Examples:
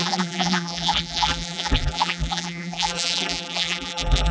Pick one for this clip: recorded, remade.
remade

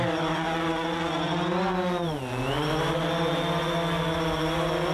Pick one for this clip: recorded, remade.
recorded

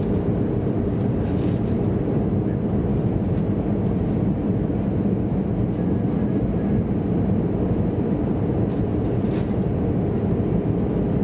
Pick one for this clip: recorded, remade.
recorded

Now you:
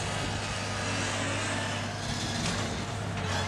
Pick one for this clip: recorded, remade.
recorded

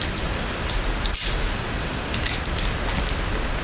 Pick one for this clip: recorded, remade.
remade